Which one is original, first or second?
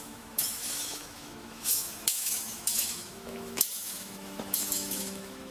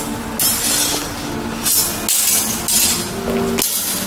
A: second